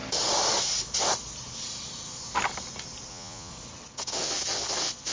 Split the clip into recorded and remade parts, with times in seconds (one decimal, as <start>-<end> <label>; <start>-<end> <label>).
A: 0.0-3.1 recorded; 3.1-3.5 remade; 3.5-5.1 recorded